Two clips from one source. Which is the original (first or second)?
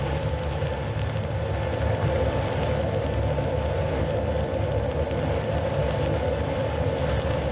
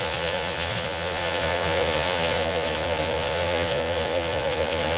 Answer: first